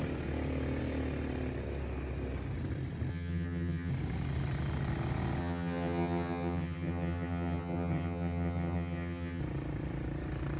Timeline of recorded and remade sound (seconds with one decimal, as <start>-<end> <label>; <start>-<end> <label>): 0.0-3.1 recorded; 3.1-3.9 remade; 3.9-5.4 recorded; 5.4-9.4 remade; 9.4-10.6 recorded